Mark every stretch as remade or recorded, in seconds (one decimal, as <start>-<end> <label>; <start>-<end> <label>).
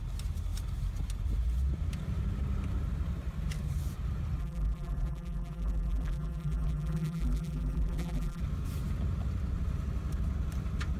0.0-4.4 recorded; 4.4-8.4 remade; 8.4-11.0 recorded